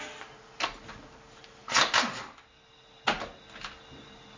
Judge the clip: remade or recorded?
recorded